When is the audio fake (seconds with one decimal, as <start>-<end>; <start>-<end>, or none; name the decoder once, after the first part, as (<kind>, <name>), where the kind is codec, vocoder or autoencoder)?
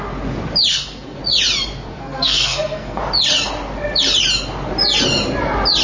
0.7-1.2 (codec, SNAC); 1.9-3.0